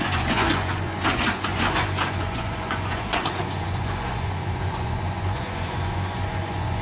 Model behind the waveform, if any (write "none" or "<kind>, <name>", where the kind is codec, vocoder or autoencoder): vocoder, Vocos